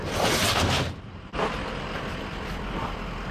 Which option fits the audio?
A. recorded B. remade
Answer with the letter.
A